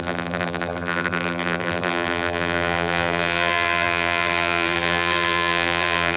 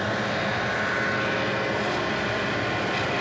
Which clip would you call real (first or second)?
second